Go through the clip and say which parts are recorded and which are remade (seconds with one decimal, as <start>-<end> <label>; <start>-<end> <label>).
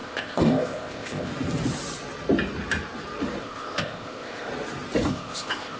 0.0-1.3 remade; 1.3-3.4 recorded; 3.4-4.5 remade; 4.5-5.1 recorded; 5.1-5.8 remade